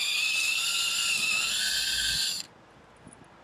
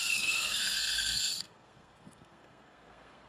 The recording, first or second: first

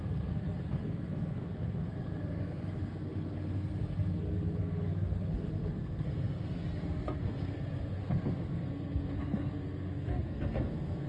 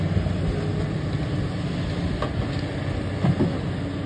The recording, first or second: second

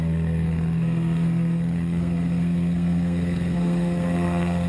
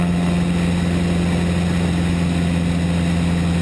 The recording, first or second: second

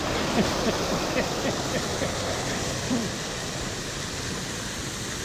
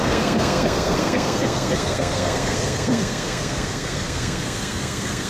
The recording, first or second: first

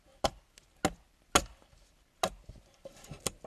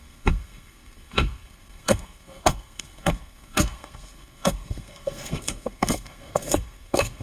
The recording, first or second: first